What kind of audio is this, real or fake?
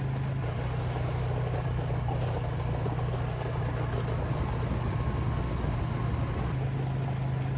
real